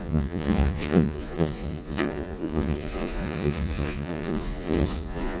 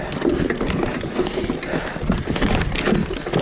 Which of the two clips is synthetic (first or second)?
first